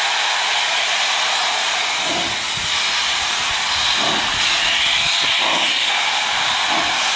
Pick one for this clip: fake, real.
real